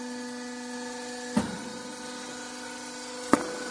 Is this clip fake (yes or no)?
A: no